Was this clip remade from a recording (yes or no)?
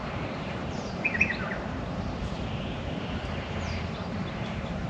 yes